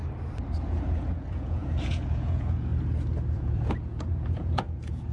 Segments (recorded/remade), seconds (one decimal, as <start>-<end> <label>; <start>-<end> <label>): 0.0-0.7 recorded; 0.7-2.7 remade; 2.7-3.3 recorded; 3.3-5.1 remade